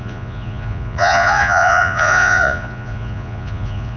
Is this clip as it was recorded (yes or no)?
no